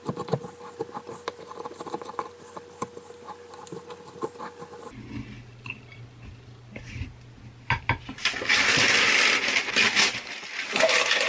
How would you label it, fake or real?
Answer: real